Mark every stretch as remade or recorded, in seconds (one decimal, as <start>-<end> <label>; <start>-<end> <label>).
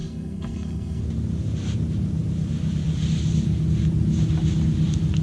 0.0-1.0 remade; 1.0-5.2 recorded